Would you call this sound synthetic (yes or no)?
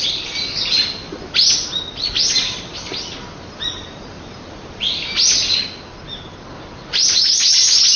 no